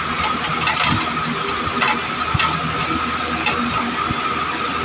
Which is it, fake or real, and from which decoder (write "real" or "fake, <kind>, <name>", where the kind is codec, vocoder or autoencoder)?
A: real